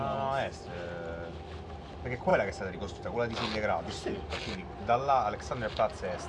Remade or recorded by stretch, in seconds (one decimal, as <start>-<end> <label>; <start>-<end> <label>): 0.0-6.3 recorded